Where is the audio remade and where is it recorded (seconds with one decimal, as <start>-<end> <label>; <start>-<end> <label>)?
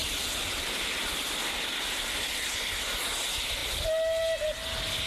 0.0-3.0 remade; 3.0-5.1 recorded